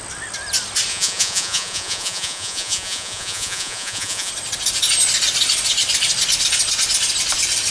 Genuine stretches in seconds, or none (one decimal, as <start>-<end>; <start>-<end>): 0.0-0.9; 4.3-7.7